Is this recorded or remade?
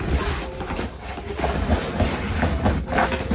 recorded